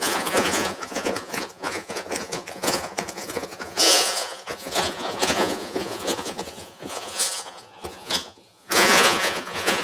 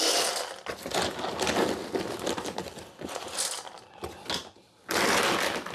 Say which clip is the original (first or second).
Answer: second